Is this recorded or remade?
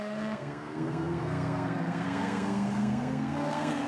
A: remade